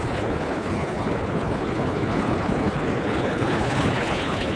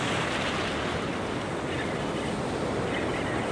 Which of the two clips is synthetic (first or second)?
first